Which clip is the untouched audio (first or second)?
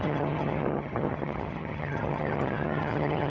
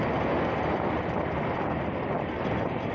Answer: second